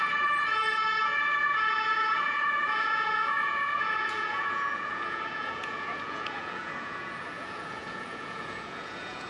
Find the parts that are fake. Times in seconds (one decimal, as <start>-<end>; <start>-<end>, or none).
0.0-9.3